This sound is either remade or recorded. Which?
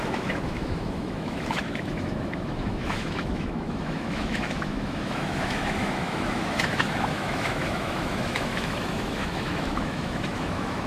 remade